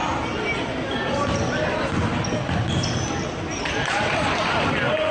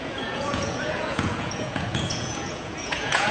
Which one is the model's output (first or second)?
second